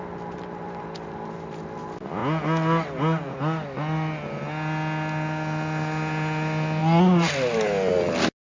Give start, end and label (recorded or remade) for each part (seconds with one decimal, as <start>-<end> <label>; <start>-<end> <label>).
0.0-8.4 recorded